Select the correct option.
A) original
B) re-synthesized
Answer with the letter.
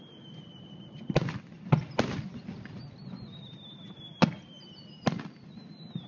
A